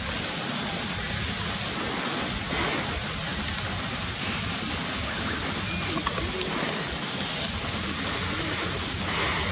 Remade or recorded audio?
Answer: recorded